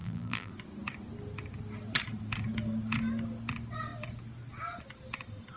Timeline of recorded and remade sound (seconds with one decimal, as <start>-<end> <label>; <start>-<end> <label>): 0.0-0.5 remade; 0.5-5.6 recorded